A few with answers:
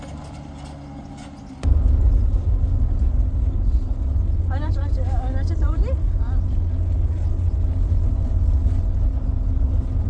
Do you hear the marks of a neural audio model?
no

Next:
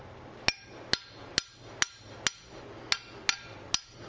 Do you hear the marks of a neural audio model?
no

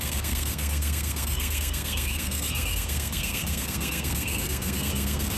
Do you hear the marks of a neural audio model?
yes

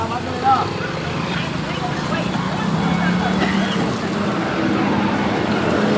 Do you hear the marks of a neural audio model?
no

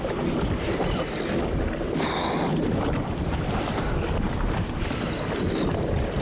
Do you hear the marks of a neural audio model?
no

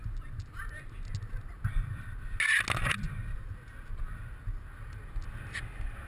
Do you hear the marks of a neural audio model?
no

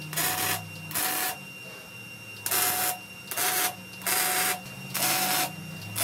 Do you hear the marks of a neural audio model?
no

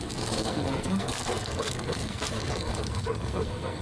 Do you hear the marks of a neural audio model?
yes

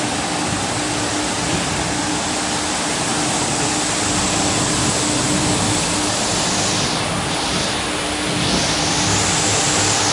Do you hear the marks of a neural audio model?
no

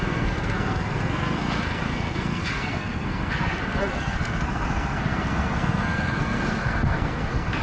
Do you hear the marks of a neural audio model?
yes